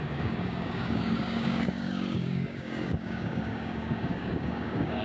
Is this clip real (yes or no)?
no